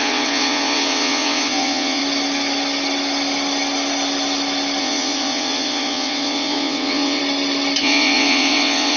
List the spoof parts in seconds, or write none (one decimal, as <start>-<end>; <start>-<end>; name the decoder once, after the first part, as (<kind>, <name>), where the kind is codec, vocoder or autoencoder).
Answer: 0.0-2.0 (vocoder, WaveNeXt); 4.8-7.2; 7.8-9.0